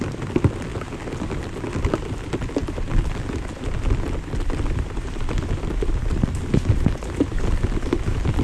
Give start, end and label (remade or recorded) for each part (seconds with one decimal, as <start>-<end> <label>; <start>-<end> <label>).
0.0-8.4 recorded